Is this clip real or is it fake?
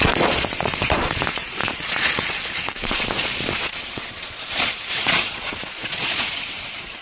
fake